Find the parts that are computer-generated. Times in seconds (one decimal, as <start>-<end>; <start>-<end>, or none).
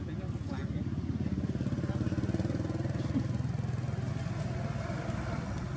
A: none